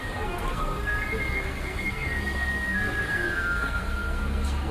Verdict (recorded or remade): remade